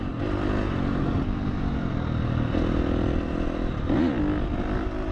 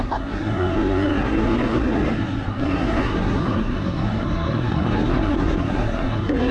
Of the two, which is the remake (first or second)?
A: second